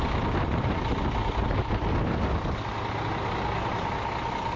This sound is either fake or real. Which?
real